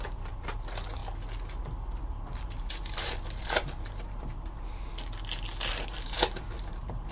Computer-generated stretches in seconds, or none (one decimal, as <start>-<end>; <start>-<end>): 0.0-1.0; 1.9-4.9; 5.8-7.1